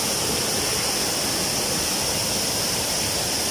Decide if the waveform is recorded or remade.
recorded